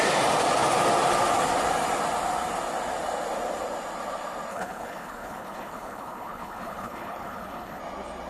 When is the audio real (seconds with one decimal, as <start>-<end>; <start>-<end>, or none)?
0.0-4.5; 7.8-8.3

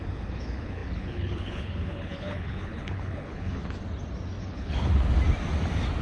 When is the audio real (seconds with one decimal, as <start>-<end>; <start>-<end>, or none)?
3.6-4.4; 4.9-6.0